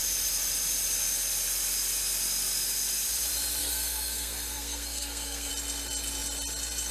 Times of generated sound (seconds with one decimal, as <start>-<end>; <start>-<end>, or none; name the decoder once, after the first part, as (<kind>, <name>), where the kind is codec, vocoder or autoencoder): 3.6-5.5 (codec, SNAC)

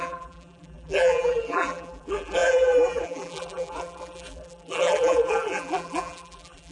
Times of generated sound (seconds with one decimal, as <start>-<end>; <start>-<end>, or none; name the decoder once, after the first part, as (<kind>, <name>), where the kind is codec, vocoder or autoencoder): 0.0-6.7 (vocoder, BigVGAN v2)

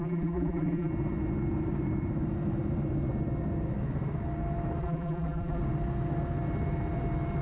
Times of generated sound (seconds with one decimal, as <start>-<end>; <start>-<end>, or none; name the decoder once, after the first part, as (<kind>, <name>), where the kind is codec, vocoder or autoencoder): 0.0-0.9 (vocoder, BigVGAN v2); 4.8-5.6

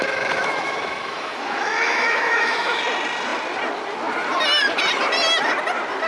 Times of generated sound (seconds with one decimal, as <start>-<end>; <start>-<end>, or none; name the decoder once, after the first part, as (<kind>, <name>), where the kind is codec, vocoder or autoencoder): 0.0-2.8 (autoencoder, DAC-VAE)

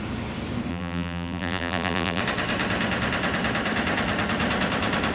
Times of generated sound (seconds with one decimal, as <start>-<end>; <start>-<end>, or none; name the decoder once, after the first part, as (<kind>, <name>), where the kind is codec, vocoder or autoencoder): 0.7-2.2 (vocoder, BigVGAN v2)